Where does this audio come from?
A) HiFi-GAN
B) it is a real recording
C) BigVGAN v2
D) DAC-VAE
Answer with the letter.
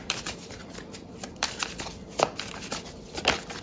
C